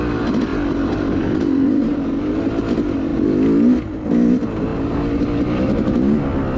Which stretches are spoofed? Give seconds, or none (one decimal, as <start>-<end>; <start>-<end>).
none